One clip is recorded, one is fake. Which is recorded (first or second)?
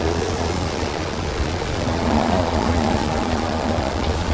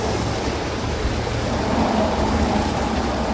second